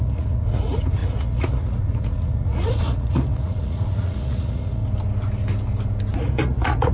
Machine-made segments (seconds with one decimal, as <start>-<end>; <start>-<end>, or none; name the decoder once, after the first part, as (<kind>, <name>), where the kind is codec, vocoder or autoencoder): 0.0-4.8 (vocoder, Vocos); 6.2-6.9